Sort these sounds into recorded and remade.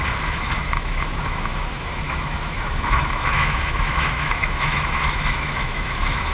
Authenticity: remade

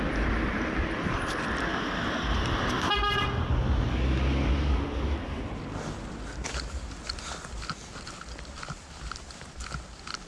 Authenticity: recorded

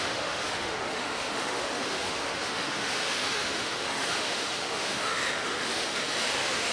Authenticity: remade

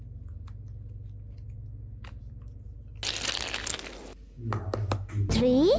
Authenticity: recorded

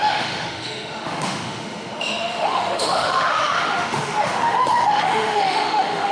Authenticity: remade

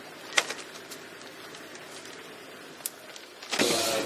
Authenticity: recorded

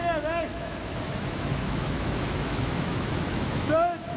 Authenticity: remade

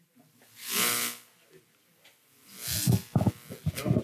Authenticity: recorded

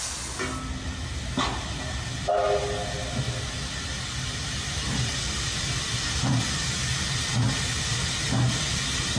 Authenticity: recorded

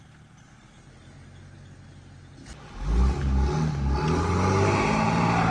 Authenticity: recorded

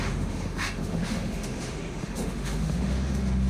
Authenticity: remade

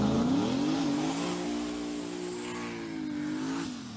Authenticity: recorded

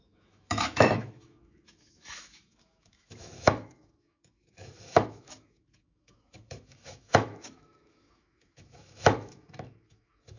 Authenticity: remade